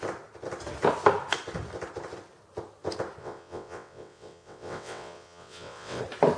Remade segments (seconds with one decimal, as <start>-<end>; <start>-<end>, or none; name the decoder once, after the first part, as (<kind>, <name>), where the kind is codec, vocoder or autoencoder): 3.2-6.0 (vocoder, WaveNeXt)